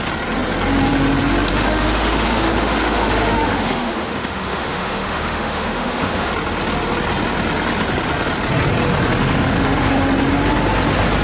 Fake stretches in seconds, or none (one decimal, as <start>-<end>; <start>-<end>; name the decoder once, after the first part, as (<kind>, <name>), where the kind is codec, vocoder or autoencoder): 1.5-6.3 (autoencoder, DAC-VAE); 9.2-9.9